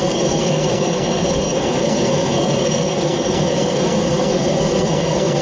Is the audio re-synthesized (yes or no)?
yes